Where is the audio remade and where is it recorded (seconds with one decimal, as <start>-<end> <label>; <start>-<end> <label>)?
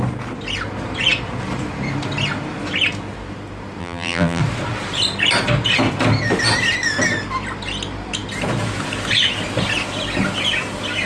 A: 0.0-3.8 recorded; 3.8-4.4 remade; 4.4-11.1 recorded